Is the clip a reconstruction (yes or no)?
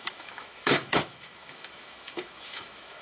yes